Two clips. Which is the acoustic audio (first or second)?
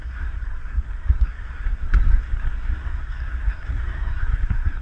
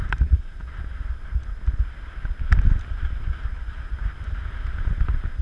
second